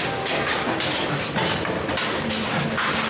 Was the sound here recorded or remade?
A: recorded